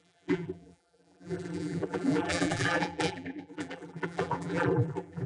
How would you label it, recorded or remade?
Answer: remade